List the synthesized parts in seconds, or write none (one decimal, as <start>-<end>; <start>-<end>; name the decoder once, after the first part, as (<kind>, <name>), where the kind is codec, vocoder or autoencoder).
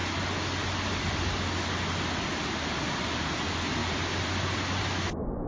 3.8-4.8 (vocoder, BigVGAN v2)